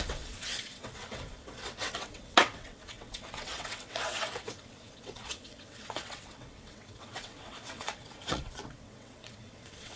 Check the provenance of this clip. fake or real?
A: fake